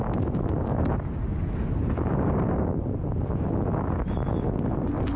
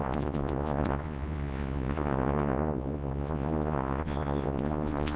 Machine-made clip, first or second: second